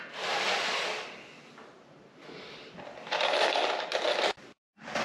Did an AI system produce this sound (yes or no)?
no